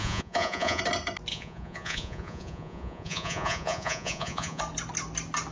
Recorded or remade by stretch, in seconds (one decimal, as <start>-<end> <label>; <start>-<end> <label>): 0.0-0.8 remade; 0.8-1.3 recorded; 1.3-4.6 remade; 4.6-5.5 recorded